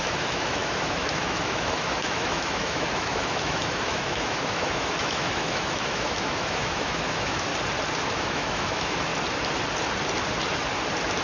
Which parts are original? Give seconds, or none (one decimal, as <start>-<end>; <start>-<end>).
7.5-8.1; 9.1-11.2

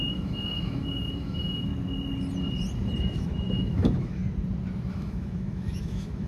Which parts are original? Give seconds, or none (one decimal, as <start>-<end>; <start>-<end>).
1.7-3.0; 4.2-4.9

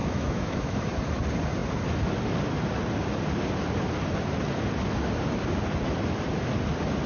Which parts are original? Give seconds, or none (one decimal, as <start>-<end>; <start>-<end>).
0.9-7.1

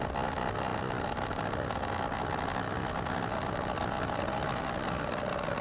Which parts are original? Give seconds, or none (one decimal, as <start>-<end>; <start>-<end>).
0.0-5.6